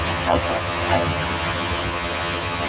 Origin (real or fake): fake